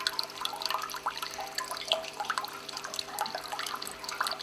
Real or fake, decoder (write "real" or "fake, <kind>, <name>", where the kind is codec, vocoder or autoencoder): real